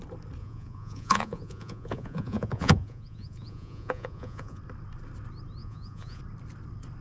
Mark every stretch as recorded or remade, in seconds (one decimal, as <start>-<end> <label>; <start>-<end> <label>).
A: 0.0-0.4 recorded; 0.4-4.6 remade; 4.6-5.6 recorded; 5.6-6.2 remade; 6.2-7.0 recorded

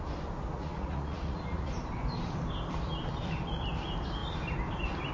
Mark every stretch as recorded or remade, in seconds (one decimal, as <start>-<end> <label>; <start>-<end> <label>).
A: 0.0-0.5 recorded; 0.5-1.7 remade; 1.7-5.1 recorded

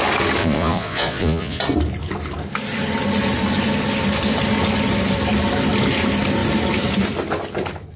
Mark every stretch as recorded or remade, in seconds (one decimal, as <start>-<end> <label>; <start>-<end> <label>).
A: 0.0-0.4 recorded; 0.4-1.6 remade; 1.6-8.0 recorded

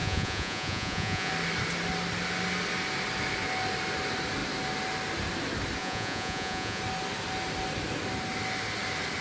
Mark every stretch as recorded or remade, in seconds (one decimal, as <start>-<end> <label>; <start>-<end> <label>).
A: 0.0-1.3 remade; 1.3-5.8 recorded; 5.8-6.8 remade; 6.8-9.2 recorded

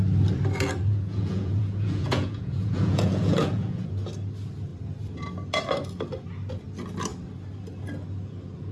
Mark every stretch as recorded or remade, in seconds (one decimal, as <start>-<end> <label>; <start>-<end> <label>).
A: 0.0-0.9 recorded; 0.9-3.9 remade; 3.9-8.7 recorded

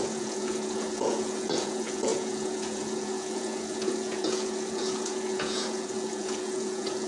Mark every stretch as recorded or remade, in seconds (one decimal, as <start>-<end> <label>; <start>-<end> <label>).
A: 0.0-7.1 remade